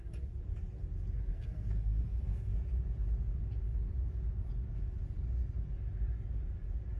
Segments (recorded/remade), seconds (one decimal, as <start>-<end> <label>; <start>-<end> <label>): 0.0-1.3 recorded; 1.3-2.6 remade; 2.6-7.0 recorded